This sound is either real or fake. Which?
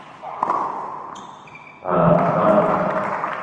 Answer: real